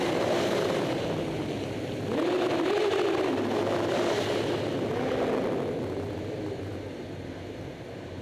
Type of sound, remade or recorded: recorded